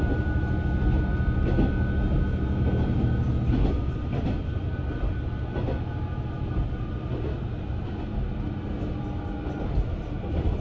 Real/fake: real